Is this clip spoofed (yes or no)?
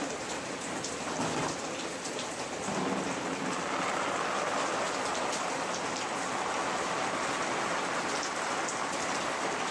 no